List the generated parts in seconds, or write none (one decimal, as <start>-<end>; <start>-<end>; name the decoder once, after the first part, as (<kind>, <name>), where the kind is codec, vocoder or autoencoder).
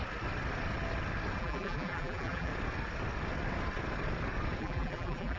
1.4-2.5 (vocoder, BigVGAN v2); 4.6-5.4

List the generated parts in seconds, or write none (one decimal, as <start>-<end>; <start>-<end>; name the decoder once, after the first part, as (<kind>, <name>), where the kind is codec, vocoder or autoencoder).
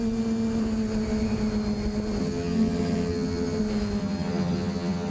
2.2-3.6 (vocoder, HiFi-GAN); 4.0-5.1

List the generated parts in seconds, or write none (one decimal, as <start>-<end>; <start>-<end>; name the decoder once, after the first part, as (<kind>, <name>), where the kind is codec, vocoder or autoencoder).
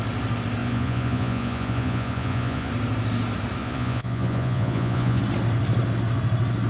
0.6-2.7 (vocoder, Vocos); 3.6-5.2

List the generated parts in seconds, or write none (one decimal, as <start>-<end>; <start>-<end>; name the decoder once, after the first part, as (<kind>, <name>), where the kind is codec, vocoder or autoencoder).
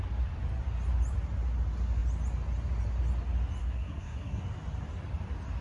3.6-4.4 (codec, SNAC)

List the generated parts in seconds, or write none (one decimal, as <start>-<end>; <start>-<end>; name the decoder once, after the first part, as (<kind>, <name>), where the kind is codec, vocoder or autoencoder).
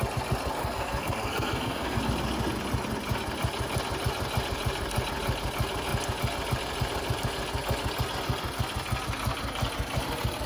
0.6-2.0 (codec, SNAC)